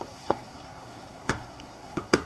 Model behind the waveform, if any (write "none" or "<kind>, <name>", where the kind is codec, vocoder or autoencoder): codec, SNAC